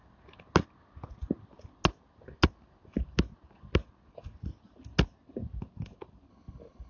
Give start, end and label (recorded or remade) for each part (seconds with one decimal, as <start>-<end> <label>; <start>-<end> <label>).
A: 0.0-6.3 recorded; 6.3-6.9 remade